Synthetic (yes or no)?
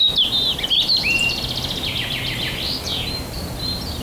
no